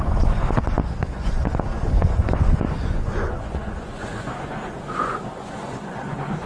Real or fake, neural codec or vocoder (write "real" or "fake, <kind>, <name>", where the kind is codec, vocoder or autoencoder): fake, vocoder, Vocos